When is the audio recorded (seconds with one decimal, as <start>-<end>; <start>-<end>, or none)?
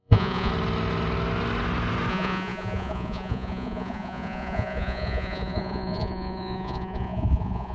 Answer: 0.5-2.1